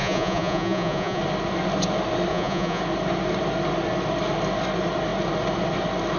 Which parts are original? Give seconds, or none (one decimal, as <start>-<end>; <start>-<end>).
1.2-2.3; 2.8-6.2